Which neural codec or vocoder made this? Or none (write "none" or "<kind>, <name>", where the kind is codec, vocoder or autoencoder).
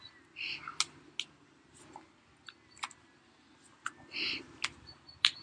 none